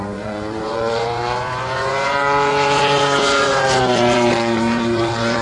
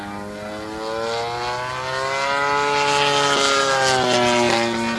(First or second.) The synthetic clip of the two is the first